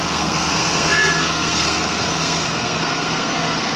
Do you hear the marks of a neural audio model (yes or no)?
yes